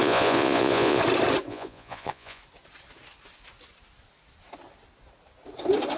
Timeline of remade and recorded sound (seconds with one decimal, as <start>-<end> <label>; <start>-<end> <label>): 0.0-1.0 remade; 1.0-1.5 recorded; 1.5-2.4 remade; 2.4-6.0 recorded